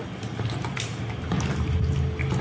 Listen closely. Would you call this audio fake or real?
real